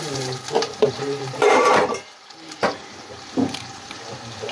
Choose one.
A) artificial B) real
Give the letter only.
A